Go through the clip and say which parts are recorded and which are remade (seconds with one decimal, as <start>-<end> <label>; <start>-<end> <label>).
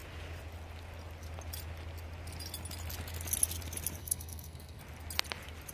0.0-4.0 recorded; 4.0-4.8 remade; 4.8-5.7 recorded